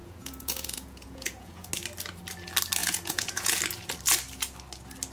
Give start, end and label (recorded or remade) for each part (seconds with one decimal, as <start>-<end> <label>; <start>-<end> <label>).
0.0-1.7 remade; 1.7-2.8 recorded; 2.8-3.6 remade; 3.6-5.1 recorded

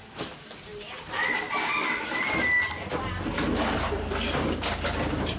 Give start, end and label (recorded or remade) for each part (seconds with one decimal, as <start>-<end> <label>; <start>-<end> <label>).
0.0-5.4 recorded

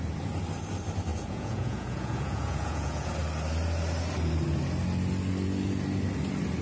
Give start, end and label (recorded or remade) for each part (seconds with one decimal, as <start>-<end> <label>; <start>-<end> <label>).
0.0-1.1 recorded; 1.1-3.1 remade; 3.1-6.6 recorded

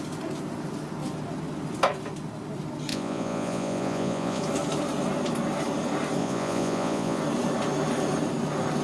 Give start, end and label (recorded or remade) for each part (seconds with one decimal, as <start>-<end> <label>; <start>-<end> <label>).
0.0-2.9 recorded; 2.9-4.4 remade; 4.4-6.2 recorded; 6.2-7.2 remade; 7.2-8.8 recorded

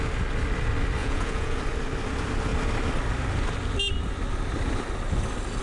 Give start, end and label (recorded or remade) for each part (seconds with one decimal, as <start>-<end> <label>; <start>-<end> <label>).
0.0-1.0 recorded; 1.0-1.6 remade; 1.6-5.6 recorded

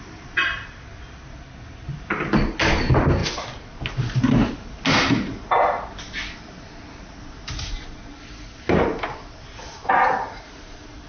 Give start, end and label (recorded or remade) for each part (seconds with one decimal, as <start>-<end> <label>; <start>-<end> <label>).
0.0-11.1 recorded